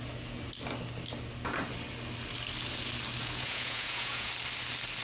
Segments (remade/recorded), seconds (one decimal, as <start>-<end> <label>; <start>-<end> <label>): 0.0-3.2 recorded; 3.2-4.3 remade; 4.3-5.0 recorded